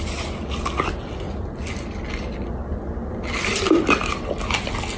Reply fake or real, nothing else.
real